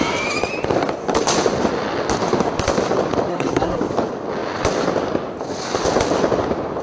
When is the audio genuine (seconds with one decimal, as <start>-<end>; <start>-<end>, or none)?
0.0-3.3; 3.8-6.8